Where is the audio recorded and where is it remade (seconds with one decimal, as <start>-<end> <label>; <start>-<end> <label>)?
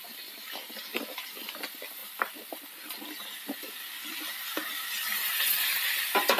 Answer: 0.0-0.9 recorded; 0.9-1.5 remade; 1.5-6.4 recorded